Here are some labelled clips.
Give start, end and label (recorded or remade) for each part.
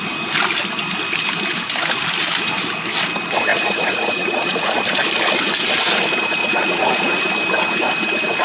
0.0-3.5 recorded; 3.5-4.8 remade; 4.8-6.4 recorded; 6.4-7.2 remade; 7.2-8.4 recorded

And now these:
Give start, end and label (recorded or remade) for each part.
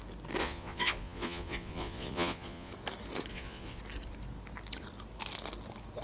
0.0-0.4 recorded; 0.4-2.7 remade; 2.7-3.3 recorded; 3.3-3.8 remade; 3.8-6.0 recorded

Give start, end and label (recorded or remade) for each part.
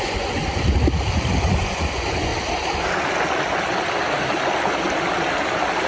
0.0-0.4 remade; 0.4-1.4 recorded; 1.4-2.3 remade; 2.3-5.9 recorded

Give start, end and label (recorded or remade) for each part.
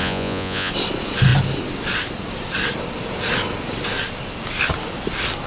0.0-0.7 remade; 0.7-5.5 recorded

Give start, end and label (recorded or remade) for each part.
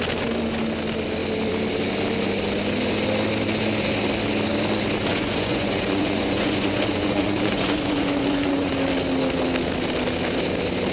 0.0-5.1 recorded; 5.1-8.7 remade; 8.7-10.9 recorded